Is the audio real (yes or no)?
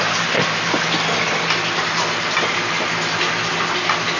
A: yes